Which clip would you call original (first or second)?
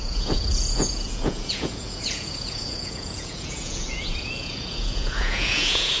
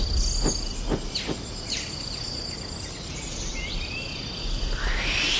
second